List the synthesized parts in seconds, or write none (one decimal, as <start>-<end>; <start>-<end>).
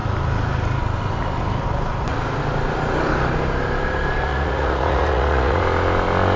4.3-5.6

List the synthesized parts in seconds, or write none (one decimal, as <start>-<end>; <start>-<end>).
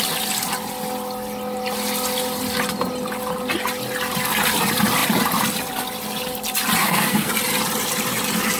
6.8-7.3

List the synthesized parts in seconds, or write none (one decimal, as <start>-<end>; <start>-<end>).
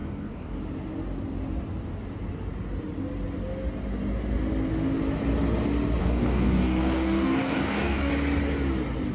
0.0-0.6; 6.0-8.1